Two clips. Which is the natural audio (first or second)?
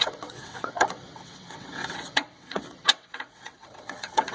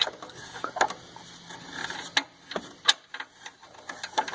second